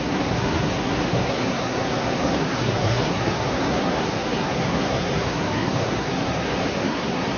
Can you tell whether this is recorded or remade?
remade